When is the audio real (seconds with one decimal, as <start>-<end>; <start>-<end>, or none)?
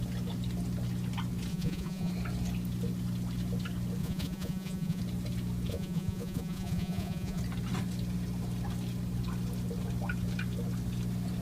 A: 0.0-1.5; 2.1-4.0; 5.0-5.7; 7.4-11.4